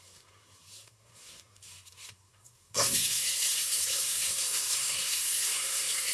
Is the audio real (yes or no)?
no